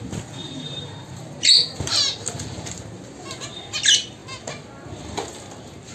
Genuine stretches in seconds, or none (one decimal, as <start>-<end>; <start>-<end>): 0.0-0.4; 2.8-5.9